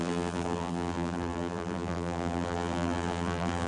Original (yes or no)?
no